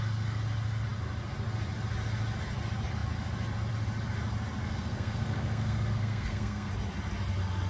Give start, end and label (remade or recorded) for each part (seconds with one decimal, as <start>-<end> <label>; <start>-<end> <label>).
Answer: 0.0-4.6 recorded; 4.6-6.7 remade; 6.7-7.7 recorded